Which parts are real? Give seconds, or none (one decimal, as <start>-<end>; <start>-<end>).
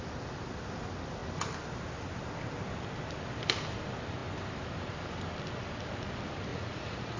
0.0-6.5